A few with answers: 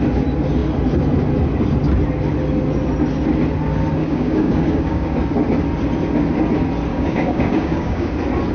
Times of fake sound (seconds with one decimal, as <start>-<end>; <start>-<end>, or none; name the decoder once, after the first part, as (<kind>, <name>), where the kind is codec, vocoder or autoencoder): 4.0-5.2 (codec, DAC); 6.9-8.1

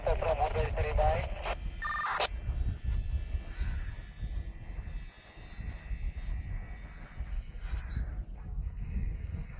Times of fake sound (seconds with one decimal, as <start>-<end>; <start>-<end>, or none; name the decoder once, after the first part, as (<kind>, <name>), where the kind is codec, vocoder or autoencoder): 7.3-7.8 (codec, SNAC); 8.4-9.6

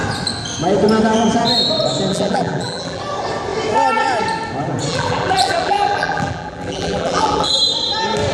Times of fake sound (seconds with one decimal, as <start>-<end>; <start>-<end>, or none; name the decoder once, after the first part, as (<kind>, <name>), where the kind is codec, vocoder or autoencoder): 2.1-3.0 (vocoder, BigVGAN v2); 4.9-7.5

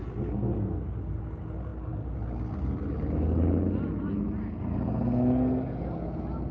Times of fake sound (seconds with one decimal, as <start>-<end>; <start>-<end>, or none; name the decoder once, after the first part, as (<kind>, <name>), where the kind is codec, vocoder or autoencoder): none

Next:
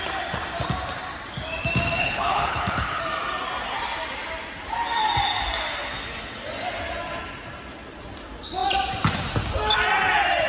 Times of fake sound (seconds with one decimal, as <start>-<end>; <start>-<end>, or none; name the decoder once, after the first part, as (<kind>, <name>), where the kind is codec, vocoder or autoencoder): 2.0-3.0 (codec, HILCodec)

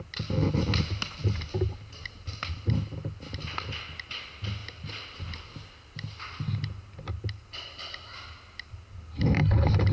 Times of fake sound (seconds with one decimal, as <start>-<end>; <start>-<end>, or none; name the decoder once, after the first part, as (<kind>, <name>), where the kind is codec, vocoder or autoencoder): none

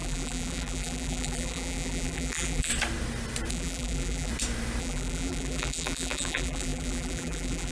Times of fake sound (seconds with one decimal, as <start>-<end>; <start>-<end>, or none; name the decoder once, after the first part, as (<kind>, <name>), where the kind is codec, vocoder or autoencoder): 0.0-2.7 (vocoder, BigVGAN v2); 3.5-4.3; 4.8-7.7

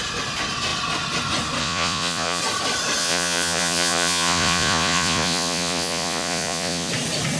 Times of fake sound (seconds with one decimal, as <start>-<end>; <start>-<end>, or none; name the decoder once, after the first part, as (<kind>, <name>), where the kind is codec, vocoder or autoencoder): 1.6-2.4 (vocoder, Vocos); 3.0-6.9